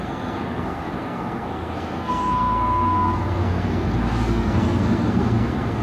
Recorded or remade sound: remade